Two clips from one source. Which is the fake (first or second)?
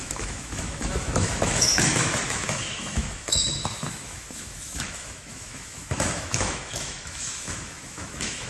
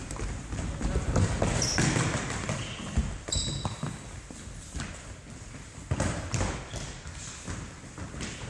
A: first